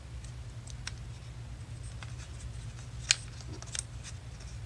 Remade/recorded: recorded